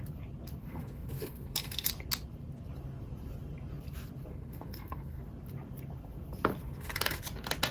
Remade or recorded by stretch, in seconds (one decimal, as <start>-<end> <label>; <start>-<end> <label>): 0.0-0.6 recorded; 0.6-1.9 remade; 1.9-4.3 recorded; 4.3-5.2 remade; 5.2-6.6 recorded; 6.6-7.2 remade; 7.2-7.7 recorded